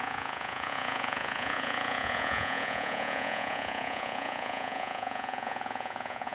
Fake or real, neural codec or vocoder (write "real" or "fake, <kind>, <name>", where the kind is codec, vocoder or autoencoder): fake, vocoder, Vocos